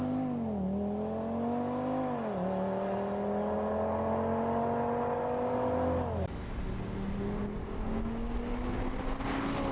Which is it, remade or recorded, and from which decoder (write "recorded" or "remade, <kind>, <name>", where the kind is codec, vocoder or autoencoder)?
recorded